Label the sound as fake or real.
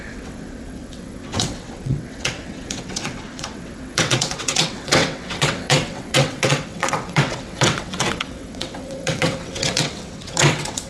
fake